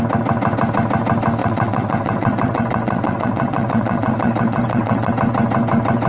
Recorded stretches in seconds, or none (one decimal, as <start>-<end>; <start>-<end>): 0.0-1.4; 5.1-6.1

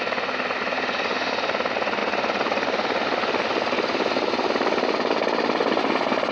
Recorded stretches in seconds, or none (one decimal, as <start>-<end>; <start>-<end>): 0.0-6.3

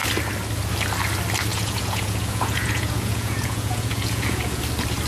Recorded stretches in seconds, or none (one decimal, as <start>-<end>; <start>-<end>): 0.0-1.5; 4.6-5.1